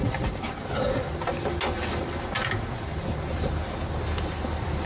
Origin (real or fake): real